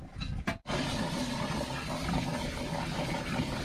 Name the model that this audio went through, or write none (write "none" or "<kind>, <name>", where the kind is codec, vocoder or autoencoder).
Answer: none